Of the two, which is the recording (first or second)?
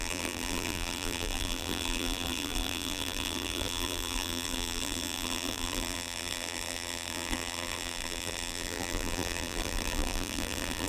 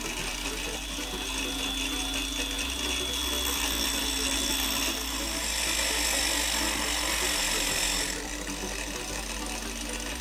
second